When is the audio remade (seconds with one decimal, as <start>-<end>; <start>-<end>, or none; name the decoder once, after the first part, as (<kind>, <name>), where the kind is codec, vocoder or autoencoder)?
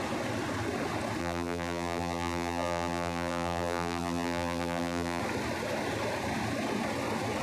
1.2-5.2 (vocoder, BigVGAN v2)